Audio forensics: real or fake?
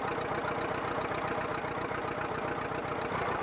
real